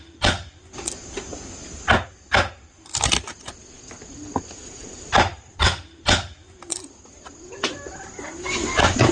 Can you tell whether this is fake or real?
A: real